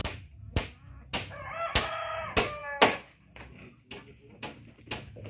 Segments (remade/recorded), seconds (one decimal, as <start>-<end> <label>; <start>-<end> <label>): 0.0-5.3 recorded